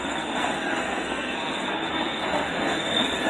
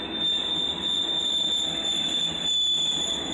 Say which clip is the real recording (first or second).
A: second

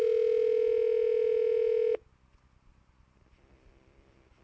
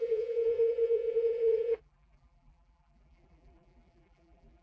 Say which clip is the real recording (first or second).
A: first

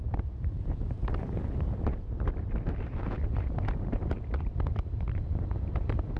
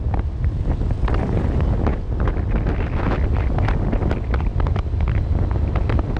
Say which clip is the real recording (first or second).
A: second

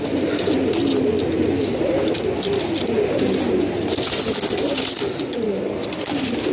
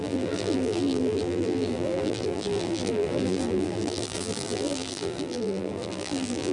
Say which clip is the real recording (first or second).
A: first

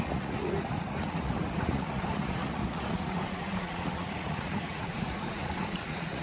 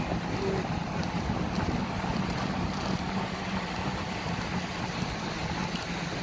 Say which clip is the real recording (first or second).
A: second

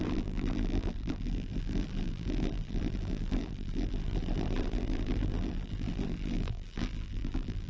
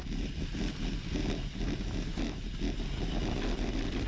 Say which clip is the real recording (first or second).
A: second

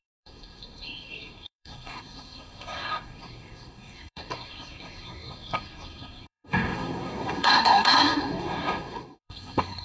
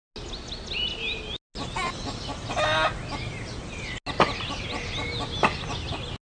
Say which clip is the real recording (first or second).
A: second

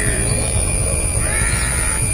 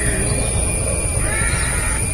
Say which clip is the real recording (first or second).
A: second